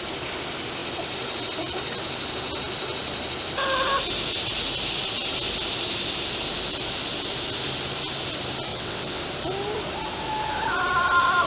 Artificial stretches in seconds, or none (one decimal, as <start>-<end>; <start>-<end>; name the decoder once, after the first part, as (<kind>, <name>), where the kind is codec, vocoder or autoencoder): 8.7-9.2 (vocoder, WaveNeXt)